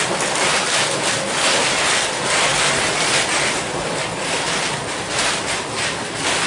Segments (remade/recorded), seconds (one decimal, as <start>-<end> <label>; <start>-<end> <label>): 0.0-6.5 recorded